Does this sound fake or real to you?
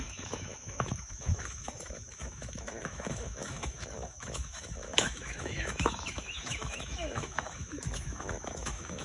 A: fake